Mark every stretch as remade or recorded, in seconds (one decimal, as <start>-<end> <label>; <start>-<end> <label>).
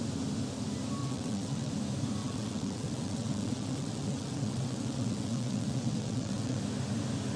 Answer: 0.0-1.0 recorded; 1.0-1.7 remade; 1.7-2.2 recorded; 2.2-6.6 remade; 6.6-7.4 recorded